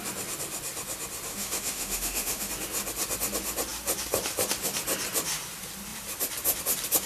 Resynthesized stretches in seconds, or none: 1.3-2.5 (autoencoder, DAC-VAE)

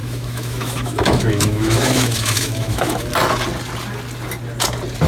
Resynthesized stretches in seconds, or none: 0.0-3.1 (autoencoder, DAC-VAE)